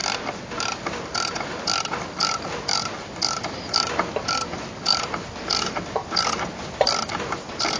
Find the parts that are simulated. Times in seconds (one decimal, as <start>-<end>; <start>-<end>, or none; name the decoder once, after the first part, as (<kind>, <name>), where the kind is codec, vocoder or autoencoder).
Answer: none